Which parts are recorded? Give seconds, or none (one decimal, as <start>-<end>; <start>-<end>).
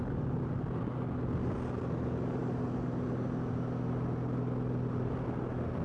0.0-5.8